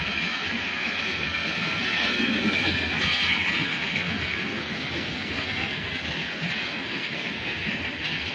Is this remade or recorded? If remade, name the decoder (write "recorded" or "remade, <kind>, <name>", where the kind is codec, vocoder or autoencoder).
remade, codec, SNAC